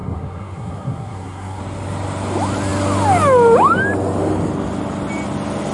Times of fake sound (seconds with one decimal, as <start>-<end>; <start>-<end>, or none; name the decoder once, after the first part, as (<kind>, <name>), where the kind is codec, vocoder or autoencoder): 0.0-1.6 (codec, SNAC)

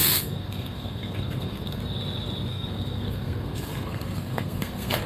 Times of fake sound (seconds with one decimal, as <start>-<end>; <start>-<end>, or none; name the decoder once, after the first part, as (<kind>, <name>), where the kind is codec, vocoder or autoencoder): 0.0-1.8 (codec, SNAC); 2.5-5.1

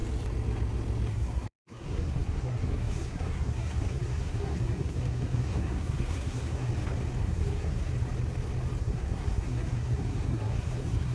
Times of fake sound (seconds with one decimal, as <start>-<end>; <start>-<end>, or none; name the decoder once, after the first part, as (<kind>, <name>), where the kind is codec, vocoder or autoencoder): 1.1-6.7 (codec, SNAC); 7.2-7.9; 8.8-11.1